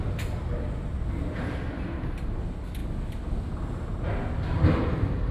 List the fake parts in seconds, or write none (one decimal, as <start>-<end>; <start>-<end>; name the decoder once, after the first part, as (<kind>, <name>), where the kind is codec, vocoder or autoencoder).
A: none